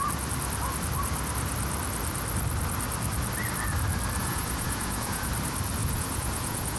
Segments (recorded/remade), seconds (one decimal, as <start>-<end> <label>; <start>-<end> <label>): 0.0-4.2 recorded; 4.2-5.3 remade; 5.3-5.8 recorded; 5.8-6.8 remade

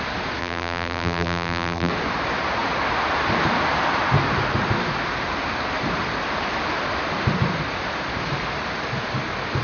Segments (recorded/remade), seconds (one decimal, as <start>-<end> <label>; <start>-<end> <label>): 0.0-0.4 recorded; 0.4-1.9 remade; 1.9-9.6 recorded

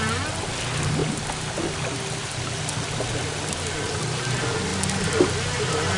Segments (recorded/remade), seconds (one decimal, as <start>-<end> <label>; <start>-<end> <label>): 0.0-6.0 recorded

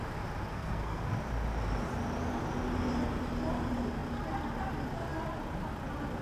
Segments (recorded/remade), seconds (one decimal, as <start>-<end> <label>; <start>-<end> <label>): 0.0-0.5 recorded; 0.5-1.1 remade; 1.1-6.2 recorded

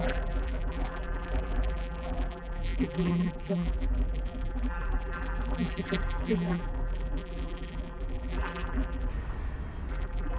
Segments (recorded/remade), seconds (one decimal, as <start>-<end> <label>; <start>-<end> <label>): 0.0-9.1 remade; 9.1-9.9 recorded; 9.9-10.4 remade

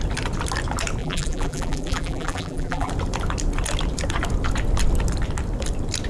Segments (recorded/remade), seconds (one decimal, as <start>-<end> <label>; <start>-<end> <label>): 0.0-1.0 recorded; 1.0-2.9 remade; 2.9-6.1 recorded